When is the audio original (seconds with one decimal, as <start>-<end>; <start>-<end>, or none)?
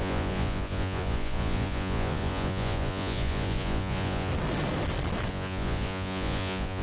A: 4.3-5.3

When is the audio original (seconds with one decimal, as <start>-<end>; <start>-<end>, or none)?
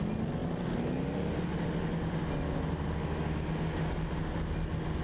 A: 0.0-5.0